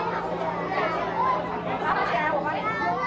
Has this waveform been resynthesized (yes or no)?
no